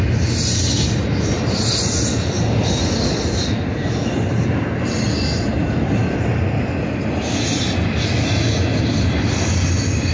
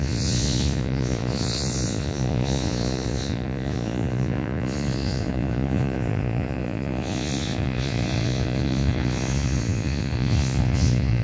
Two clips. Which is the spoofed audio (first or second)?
second